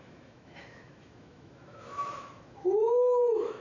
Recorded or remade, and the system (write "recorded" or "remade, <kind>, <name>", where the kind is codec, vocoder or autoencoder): remade, autoencoder, DAC-VAE